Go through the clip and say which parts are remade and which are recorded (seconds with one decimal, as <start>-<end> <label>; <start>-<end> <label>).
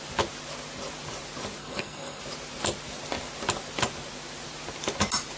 0.0-1.6 recorded; 1.6-2.2 remade; 2.2-5.4 recorded